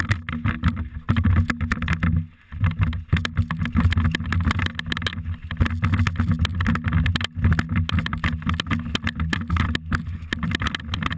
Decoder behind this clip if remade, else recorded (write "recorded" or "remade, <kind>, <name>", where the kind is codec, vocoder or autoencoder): recorded